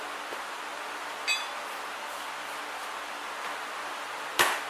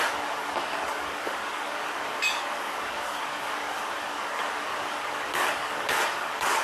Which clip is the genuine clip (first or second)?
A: first